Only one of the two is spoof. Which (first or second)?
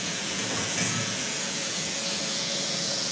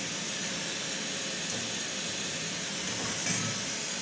first